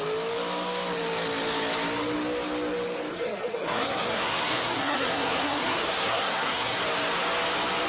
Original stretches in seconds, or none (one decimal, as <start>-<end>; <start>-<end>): 0.0-3.1; 6.8-7.9